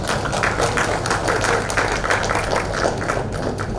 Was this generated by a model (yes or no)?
no